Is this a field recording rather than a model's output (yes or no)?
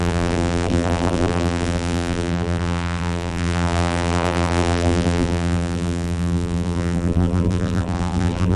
no